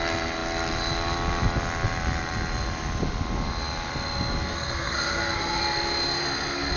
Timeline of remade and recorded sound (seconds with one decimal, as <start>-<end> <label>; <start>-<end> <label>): 0.0-4.5 recorded; 4.5-5.6 remade; 5.6-6.8 recorded